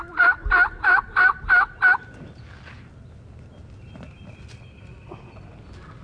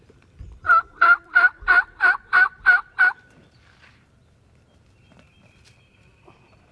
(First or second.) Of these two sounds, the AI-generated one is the second